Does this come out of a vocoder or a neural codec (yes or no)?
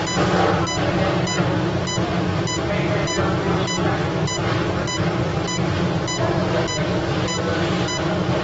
no